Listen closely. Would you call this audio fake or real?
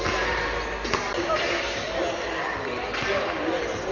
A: real